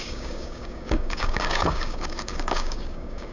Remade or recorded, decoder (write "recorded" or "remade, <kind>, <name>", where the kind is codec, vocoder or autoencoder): remade, codec, DAC